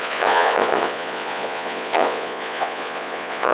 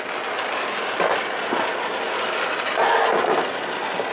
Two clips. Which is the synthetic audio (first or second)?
first